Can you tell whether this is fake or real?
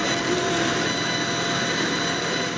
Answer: real